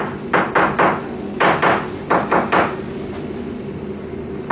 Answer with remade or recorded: recorded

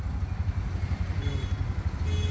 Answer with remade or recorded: recorded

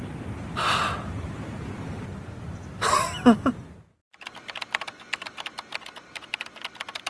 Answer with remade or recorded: recorded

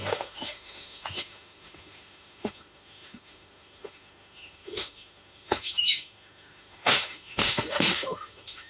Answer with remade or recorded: remade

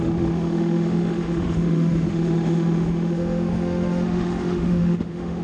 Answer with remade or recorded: remade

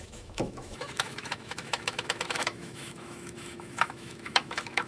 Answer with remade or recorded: remade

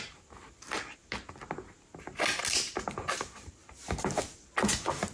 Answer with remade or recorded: recorded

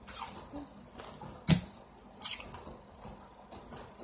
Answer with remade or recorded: recorded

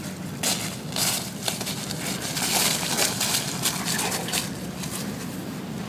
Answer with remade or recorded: recorded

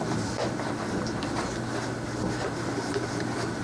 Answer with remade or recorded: recorded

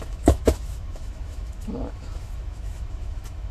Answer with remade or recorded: remade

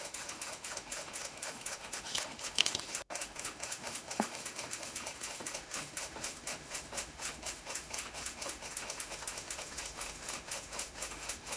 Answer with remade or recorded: remade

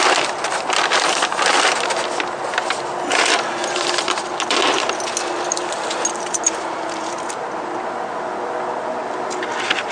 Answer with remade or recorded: recorded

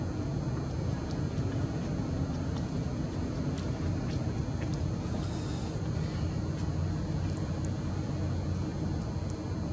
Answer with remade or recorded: recorded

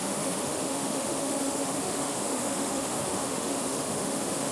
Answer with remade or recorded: remade